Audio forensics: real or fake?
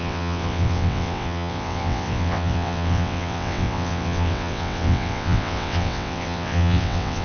fake